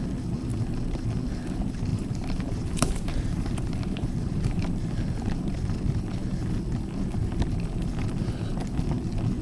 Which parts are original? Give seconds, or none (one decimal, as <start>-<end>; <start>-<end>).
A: 0.0-1.9; 4.7-9.4